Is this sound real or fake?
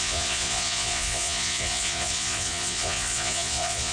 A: fake